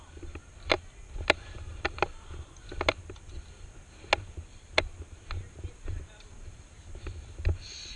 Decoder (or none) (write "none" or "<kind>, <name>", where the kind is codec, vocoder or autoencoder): none